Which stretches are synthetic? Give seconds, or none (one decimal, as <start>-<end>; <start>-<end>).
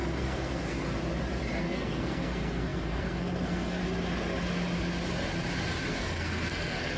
0.0-0.9; 1.6-3.8; 5.9-7.0